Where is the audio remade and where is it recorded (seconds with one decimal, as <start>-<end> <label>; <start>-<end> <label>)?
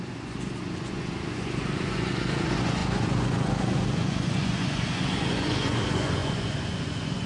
0.0-7.3 remade